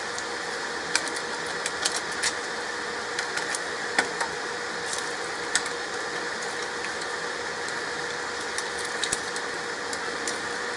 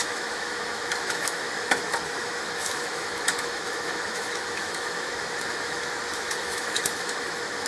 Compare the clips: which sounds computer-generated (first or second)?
second